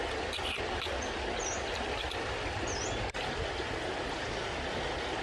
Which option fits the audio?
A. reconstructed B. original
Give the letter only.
B